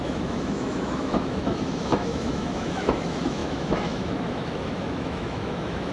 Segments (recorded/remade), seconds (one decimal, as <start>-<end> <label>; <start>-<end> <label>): 0.0-5.9 remade